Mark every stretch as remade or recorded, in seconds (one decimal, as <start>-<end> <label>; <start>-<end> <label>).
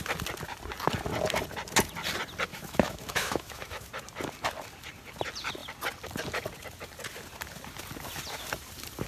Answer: 0.0-2.5 recorded; 2.5-3.9 remade; 3.9-9.1 recorded